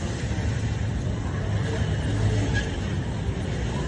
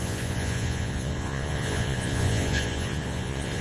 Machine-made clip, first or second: second